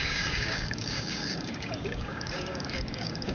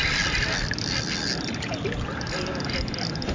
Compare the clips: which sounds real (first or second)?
second